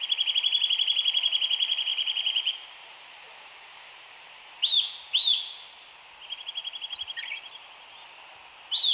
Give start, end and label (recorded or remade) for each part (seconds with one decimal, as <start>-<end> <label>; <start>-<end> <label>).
0.0-1.9 recorded; 1.9-4.7 remade; 4.7-8.9 recorded